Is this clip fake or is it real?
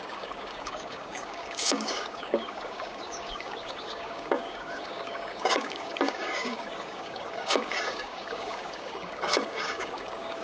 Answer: fake